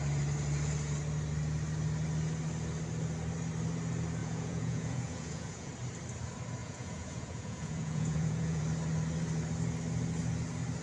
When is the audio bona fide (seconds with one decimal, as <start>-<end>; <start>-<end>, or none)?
0.0-4.2; 5.7-6.6; 8.6-10.8